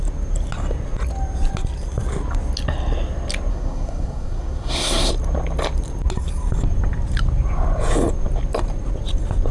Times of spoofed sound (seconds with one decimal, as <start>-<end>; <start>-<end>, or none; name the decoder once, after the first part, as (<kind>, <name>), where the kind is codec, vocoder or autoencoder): 3.5-5.1 (codec, SNAC)